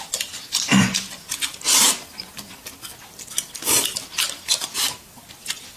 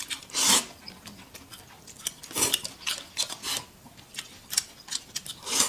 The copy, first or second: first